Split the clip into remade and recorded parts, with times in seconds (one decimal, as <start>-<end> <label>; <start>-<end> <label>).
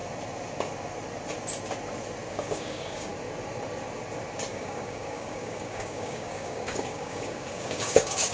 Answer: 0.0-2.3 recorded; 2.3-3.1 remade; 3.1-4.5 recorded; 4.5-8.3 remade